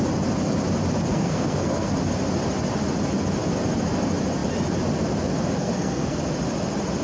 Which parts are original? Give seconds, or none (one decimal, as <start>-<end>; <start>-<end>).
0.0-1.1; 1.9-5.6; 6.2-7.0